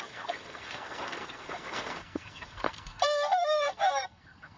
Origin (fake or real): fake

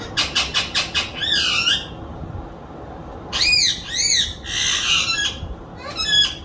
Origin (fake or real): real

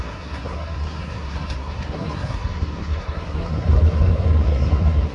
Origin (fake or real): fake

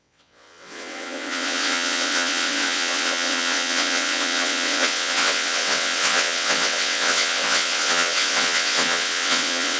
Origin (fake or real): fake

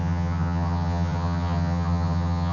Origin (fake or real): fake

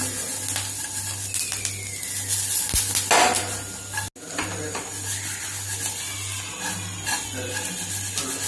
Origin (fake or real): real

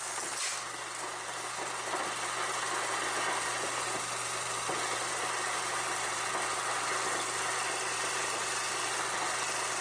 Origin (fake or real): real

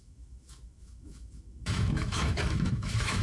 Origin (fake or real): fake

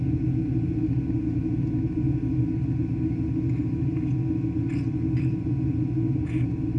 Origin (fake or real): real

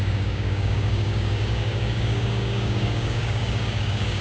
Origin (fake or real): fake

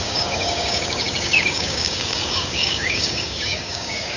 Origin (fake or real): fake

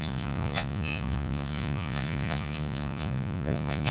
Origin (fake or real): fake